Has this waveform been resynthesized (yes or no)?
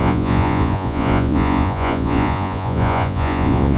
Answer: yes